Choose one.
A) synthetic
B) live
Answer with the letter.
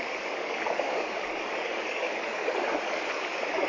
A